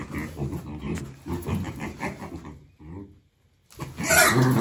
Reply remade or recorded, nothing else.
recorded